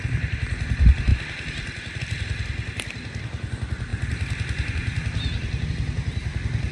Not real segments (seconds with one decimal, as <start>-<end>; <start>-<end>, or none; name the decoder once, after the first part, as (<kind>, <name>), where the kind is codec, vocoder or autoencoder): none

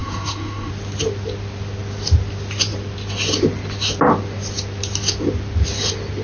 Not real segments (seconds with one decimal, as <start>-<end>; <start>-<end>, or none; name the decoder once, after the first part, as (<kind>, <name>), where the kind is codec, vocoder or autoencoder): 0.0-0.7 (codec, SNAC)

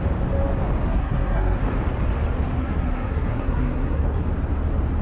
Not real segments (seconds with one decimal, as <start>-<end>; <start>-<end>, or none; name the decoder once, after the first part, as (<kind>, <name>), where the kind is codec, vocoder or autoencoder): 0.8-1.6 (codec, SNAC); 2.6-4.2

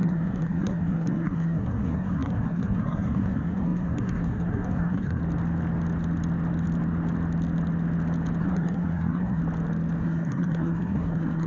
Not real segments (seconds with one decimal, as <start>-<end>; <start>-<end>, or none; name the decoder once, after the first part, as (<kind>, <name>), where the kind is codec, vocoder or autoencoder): 0.0-5.2 (codec, SNAC); 8.4-9.4; 10.0-11.5

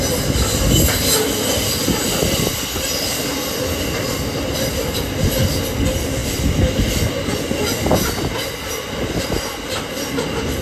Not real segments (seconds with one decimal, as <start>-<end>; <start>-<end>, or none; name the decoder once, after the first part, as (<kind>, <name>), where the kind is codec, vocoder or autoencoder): none